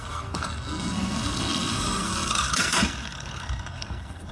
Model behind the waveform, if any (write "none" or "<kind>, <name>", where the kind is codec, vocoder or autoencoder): codec, SNAC